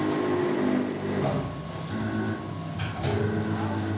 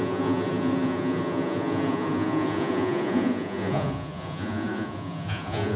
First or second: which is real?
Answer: first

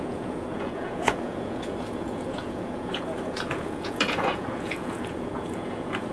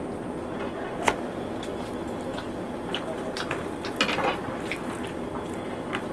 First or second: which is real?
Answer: second